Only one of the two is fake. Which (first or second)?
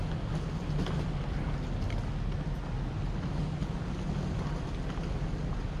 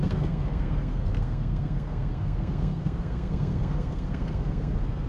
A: second